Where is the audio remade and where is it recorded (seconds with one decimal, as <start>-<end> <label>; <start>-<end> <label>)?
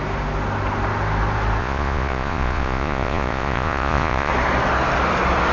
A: 0.0-1.6 recorded; 1.6-4.3 remade; 4.3-5.5 recorded